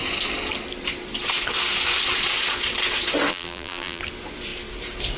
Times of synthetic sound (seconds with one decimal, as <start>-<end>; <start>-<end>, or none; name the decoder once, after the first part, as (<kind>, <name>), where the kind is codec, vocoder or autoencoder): 3.3-4.0 (vocoder, BigVGAN v2)